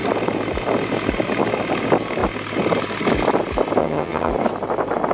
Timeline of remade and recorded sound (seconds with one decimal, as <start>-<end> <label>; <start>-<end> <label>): 0.0-3.8 recorded; 3.8-4.3 remade; 4.3-5.1 recorded